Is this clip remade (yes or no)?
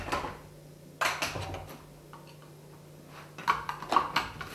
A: no